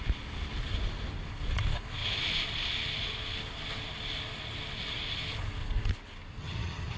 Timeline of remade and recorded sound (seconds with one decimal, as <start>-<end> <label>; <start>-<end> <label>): 0.0-6.4 recorded; 6.4-7.0 remade